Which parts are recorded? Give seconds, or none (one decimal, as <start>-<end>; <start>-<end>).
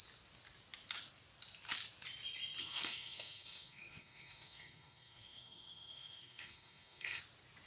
0.0-2.6; 7.2-7.7